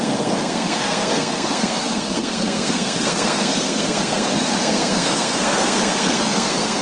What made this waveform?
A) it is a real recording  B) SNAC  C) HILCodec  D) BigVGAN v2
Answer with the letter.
B